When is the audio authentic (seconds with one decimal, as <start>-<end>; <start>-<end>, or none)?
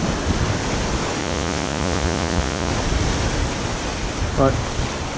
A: 0.0-1.2; 2.7-5.2